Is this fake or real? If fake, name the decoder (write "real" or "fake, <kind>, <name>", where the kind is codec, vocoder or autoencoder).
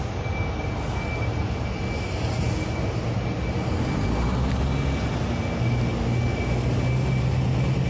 real